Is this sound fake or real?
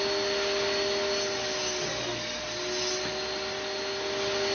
real